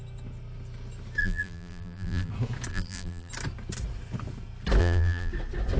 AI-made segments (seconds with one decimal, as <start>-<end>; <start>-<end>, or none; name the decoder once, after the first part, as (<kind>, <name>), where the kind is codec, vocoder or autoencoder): 1.2-2.3 (vocoder, BigVGAN v2); 2.7-3.3; 4.8-5.3